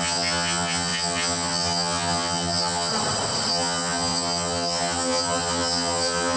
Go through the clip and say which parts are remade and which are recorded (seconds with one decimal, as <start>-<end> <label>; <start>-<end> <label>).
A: 0.0-2.9 remade; 2.9-3.5 recorded; 3.5-6.4 remade